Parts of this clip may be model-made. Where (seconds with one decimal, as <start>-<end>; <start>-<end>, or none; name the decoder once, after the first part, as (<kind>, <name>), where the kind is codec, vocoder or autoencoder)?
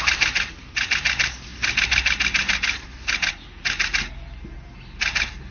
none